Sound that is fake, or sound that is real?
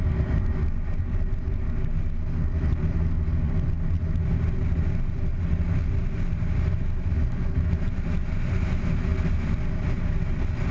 real